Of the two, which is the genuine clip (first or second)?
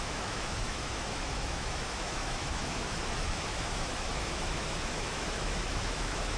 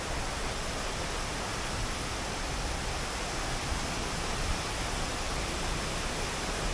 second